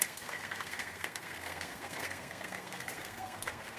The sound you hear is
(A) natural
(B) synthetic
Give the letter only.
B